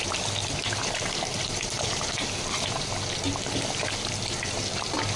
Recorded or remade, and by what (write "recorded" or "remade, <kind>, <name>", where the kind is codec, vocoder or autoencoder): remade, vocoder, BigVGAN v2